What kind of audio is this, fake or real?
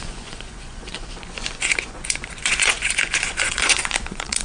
fake